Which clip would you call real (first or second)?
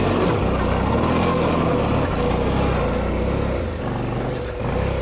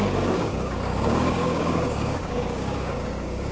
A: first